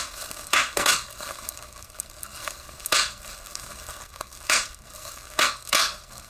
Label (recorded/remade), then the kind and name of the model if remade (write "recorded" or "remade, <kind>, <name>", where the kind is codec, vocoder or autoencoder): remade, codec, SNAC